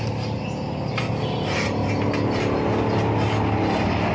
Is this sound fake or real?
real